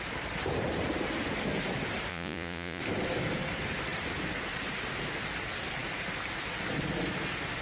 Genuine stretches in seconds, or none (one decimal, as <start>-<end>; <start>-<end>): 0.0-2.1; 2.8-7.6